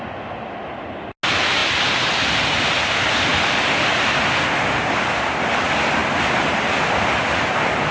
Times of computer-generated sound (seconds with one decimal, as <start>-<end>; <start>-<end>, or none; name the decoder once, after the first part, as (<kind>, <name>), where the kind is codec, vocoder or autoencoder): none